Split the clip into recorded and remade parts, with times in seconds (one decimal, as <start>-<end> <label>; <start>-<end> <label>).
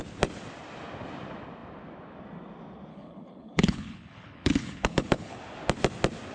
0.0-2.9 recorded; 2.9-5.4 remade; 5.4-6.3 recorded